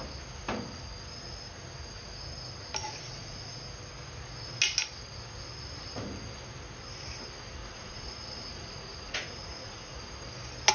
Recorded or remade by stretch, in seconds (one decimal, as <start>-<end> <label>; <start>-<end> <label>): 0.0-2.8 recorded; 2.8-3.6 remade; 3.6-7.7 recorded; 7.7-10.0 remade; 10.0-10.7 recorded